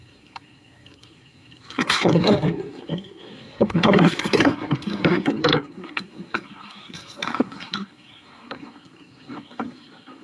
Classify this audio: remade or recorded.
remade